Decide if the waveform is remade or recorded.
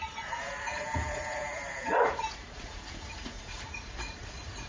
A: remade